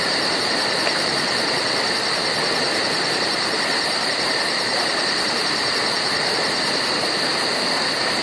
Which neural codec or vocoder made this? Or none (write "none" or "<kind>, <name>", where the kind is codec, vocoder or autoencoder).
vocoder, BigVGAN v2